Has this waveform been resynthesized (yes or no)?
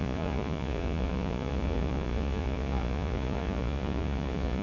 yes